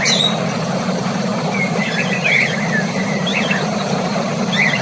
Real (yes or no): yes